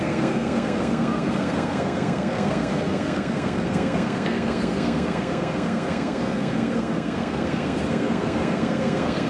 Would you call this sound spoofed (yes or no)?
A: yes